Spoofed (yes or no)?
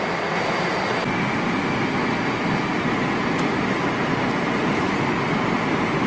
no